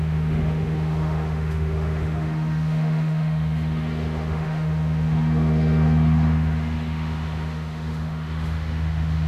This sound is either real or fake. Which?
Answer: fake